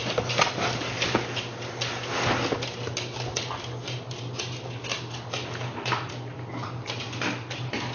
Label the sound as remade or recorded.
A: recorded